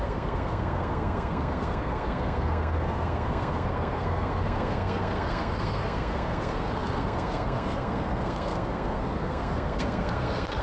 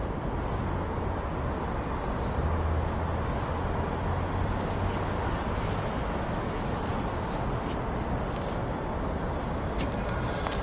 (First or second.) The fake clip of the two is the first